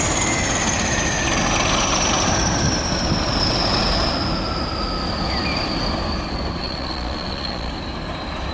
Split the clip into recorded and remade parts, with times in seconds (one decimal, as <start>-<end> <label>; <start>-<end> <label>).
0.0-6.6 recorded; 6.6-7.7 remade; 7.7-8.5 recorded